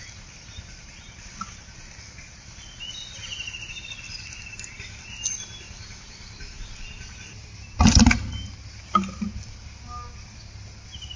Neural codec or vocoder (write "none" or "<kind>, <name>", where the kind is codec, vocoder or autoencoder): none